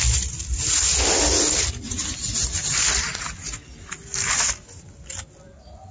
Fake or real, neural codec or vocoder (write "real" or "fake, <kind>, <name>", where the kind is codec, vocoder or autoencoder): real